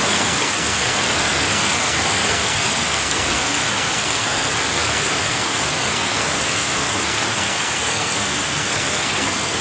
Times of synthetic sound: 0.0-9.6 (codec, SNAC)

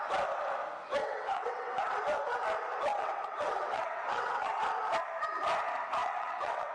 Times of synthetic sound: 1.0-2.0 (vocoder, WaveNeXt); 2.9-4.6; 6.0-6.7

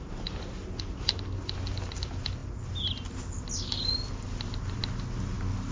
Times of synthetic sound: none

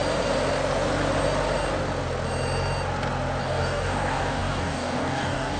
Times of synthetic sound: 3.4-5.6 (codec, DAC)

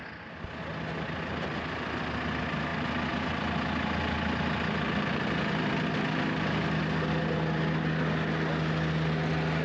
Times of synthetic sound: none

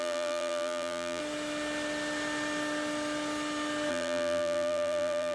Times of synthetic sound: 0.0-1.2 (vocoder, BigVGAN v2); 3.9-5.3

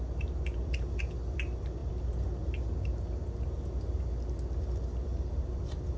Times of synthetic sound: none